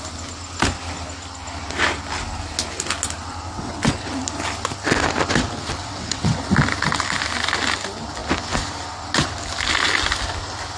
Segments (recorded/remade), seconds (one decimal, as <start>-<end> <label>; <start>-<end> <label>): 0.0-3.5 recorded; 3.5-4.1 remade; 4.1-5.8 recorded; 5.8-6.4 remade; 6.4-10.8 recorded